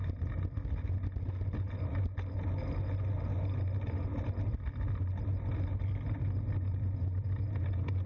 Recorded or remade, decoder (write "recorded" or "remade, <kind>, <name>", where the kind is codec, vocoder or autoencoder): recorded